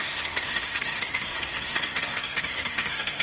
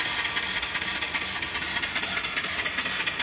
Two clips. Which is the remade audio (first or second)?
first